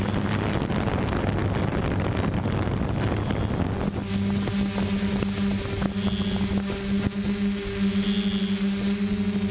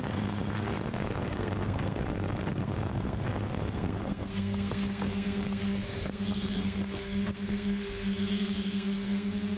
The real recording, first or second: first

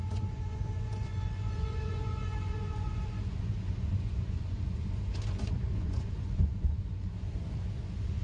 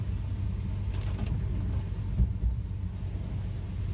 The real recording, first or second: second